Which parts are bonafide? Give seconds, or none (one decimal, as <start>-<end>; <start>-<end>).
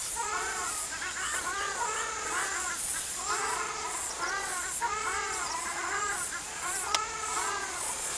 none